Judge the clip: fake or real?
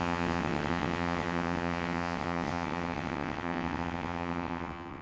fake